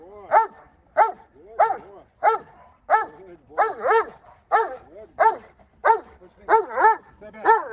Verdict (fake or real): real